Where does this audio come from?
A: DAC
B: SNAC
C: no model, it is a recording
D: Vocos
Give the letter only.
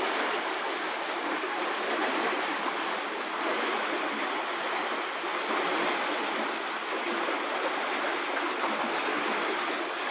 C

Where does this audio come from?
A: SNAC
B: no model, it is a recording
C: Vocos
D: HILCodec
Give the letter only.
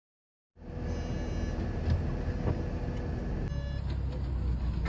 B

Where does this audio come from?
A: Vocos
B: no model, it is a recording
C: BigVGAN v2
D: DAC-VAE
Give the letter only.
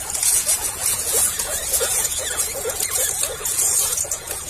A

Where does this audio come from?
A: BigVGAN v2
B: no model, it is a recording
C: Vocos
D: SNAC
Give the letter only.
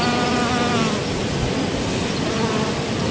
B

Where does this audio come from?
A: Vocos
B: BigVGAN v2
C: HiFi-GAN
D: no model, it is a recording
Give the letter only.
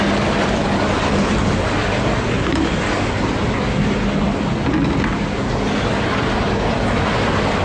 D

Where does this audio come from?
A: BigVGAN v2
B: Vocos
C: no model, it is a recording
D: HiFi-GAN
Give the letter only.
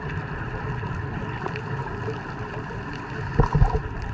C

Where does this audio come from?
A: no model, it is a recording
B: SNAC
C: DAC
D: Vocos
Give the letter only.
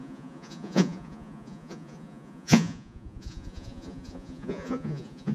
D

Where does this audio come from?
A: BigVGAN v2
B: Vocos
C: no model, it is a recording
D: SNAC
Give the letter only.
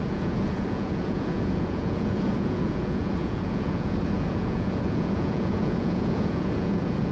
B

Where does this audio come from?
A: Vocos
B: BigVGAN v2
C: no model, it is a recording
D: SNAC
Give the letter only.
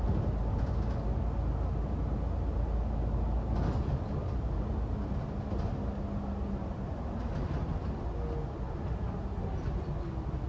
C